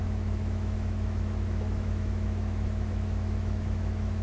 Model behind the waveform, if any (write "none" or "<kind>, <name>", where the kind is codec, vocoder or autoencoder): autoencoder, DAC-VAE